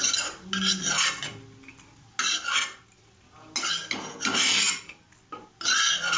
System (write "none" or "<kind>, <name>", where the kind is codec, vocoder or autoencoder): none